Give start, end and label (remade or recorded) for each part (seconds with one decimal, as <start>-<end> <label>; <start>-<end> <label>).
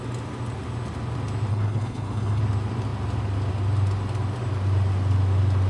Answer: 0.0-1.5 recorded; 1.5-2.4 remade; 2.4-5.7 recorded